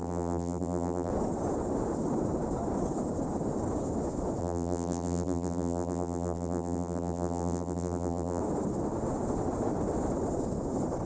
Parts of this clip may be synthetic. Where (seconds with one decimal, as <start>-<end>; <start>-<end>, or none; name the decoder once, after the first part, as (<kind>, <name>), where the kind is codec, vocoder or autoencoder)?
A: 0.0-1.1 (vocoder, BigVGAN v2); 4.4-8.4